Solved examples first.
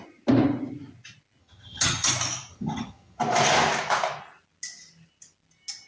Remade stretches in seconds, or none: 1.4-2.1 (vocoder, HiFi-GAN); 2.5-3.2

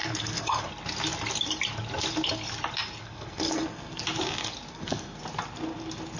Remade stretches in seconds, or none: 0.0-0.6 (codec, SNAC); 3.0-4.0; 4.7-5.2

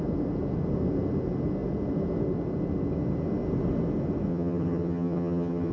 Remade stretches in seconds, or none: 4.3-5.7 (vocoder, HiFi-GAN)

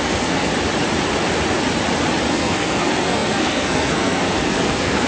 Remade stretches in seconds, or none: 0.0-0.5 (codec, SNAC); 2.3-5.1

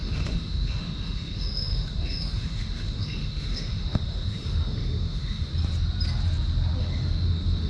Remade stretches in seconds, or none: 0.0-5.5 (autoencoder, DAC-VAE); 6.8-7.7

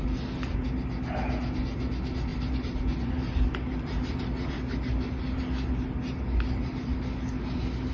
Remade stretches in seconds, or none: 4.9-5.4 (vocoder, BigVGAN v2)

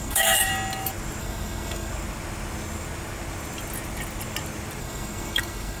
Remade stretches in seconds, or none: 0.0-0.5 (codec, SNAC); 1.2-1.9; 4.8-5.8

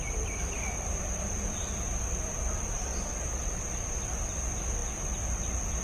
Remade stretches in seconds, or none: none